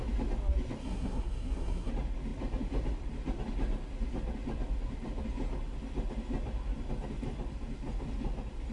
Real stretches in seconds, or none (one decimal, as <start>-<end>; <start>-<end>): 0.0-0.8; 1.9-8.7